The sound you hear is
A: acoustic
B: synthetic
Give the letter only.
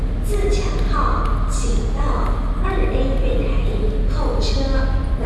A